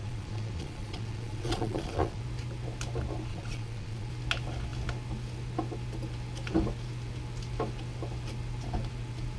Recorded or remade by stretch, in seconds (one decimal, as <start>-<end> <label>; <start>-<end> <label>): 0.0-2.2 remade; 2.2-3.3 recorded; 3.3-4.1 remade; 4.1-9.4 recorded